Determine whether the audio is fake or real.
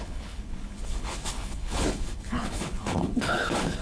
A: fake